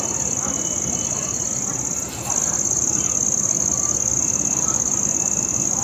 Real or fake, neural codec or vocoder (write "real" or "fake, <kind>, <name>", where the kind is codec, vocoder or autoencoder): real